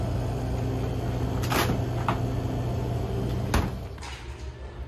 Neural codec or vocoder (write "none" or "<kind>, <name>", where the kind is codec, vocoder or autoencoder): none